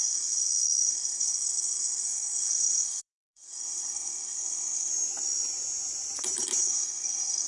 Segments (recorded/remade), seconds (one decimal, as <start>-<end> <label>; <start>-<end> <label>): 0.0-4.9 remade; 4.9-6.6 recorded; 6.6-7.5 remade